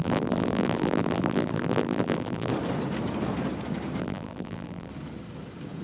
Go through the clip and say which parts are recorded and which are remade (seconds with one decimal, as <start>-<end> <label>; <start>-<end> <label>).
0.0-2.5 remade; 2.5-4.0 recorded; 4.0-4.9 remade; 4.9-5.8 recorded